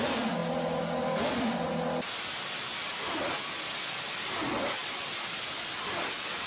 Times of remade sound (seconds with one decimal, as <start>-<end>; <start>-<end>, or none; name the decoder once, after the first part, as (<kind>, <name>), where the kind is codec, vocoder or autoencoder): none